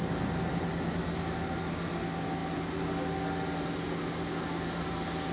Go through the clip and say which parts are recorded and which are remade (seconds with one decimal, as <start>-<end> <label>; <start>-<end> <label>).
0.0-5.3 recorded